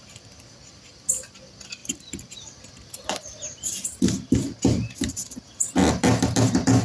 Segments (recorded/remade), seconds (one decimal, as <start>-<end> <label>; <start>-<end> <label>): 0.0-1.8 recorded; 1.8-5.9 remade; 5.9-6.8 recorded